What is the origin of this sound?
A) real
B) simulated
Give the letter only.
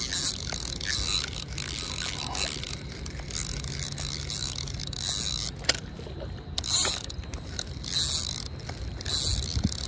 A